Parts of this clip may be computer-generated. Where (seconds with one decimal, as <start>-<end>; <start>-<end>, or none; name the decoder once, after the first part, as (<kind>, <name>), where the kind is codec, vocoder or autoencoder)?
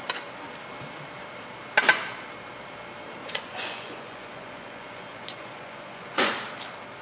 3.2-6.3 (vocoder, Vocos)